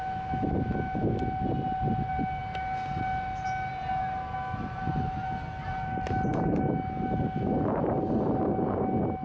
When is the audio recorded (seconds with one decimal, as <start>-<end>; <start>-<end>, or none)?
0.0-9.2